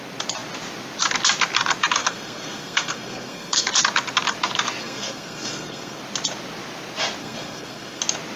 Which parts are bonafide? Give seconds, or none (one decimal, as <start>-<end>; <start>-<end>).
0.0-2.0; 3.7-4.8; 6.0-7.2; 8.0-8.4